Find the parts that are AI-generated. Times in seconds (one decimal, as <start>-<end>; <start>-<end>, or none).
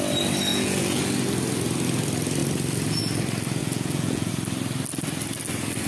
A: 0.5-1.0; 3.6-4.3